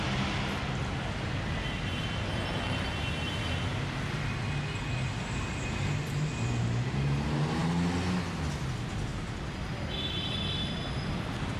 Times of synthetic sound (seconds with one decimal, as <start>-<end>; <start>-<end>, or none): none